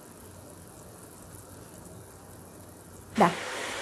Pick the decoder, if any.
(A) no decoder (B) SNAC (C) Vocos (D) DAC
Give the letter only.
A